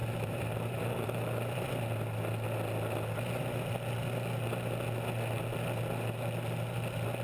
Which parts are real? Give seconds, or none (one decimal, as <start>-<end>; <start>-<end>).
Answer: 1.7-7.2